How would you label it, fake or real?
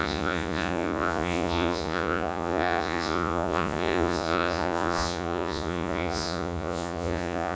fake